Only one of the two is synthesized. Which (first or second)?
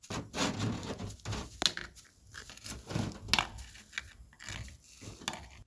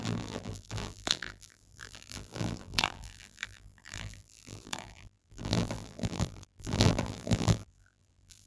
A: second